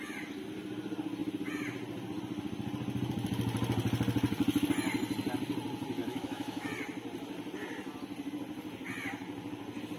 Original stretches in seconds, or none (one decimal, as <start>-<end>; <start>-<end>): 0.0-6.0; 6.7-10.0